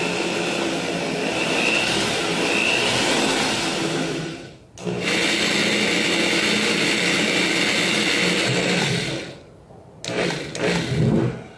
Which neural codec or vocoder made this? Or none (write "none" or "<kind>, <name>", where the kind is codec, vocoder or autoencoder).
none